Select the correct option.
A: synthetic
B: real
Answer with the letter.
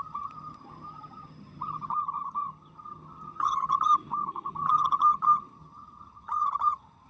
A